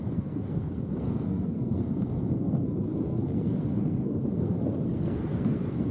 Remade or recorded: remade